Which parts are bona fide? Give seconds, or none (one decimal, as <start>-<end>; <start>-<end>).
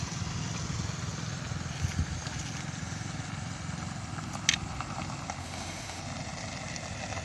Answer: 0.0-5.4; 6.0-7.2